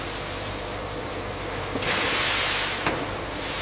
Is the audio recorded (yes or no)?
yes